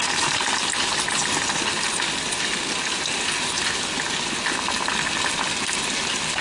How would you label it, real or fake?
real